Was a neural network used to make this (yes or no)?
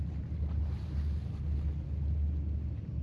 no